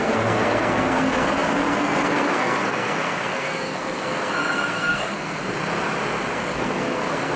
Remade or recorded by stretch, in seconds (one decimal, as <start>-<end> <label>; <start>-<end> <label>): 0.0-5.4 remade; 5.4-6.3 recorded; 6.3-7.4 remade